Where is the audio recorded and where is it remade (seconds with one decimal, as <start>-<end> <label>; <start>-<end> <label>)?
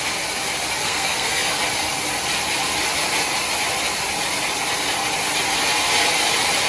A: 0.0-0.8 recorded; 0.8-1.6 remade; 1.6-6.7 recorded